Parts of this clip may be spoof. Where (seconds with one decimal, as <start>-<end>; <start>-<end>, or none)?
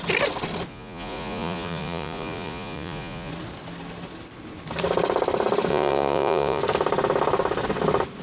0.7-3.3; 5.7-6.6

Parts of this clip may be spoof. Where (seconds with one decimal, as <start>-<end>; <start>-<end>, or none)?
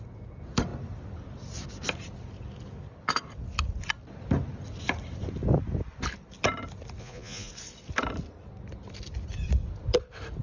7.0-7.5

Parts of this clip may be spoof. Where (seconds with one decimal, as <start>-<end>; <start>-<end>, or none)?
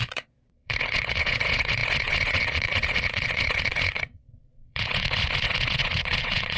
0.0-6.6